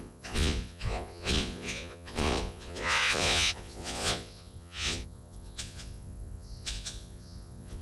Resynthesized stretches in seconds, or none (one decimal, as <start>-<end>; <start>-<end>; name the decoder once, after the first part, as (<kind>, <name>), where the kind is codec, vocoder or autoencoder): 0.0-7.8 (vocoder, Vocos)